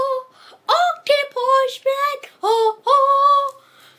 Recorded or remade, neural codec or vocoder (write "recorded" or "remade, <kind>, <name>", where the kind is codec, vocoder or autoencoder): recorded